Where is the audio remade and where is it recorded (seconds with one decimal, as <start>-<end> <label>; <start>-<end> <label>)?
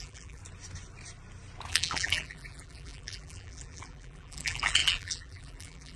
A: 0.0-0.4 remade; 0.4-1.7 recorded; 1.7-6.0 remade